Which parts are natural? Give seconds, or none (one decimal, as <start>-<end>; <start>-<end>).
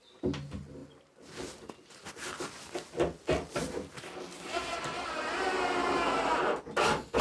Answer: 0.0-7.2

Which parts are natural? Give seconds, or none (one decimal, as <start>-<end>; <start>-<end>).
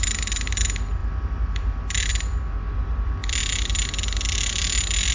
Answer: 0.0-5.1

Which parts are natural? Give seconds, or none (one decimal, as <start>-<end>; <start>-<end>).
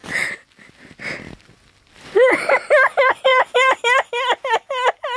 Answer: 0.7-5.2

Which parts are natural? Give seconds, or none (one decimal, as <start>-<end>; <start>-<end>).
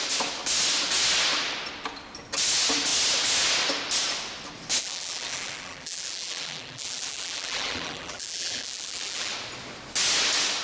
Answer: 0.0-4.8; 9.3-10.6